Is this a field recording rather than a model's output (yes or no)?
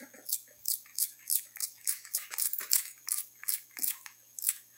no